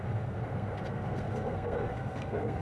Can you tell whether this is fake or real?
fake